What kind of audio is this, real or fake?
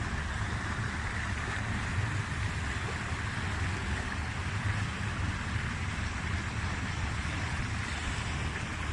real